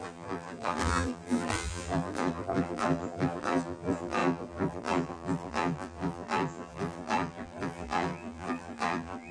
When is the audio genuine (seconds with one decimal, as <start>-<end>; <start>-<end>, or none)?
none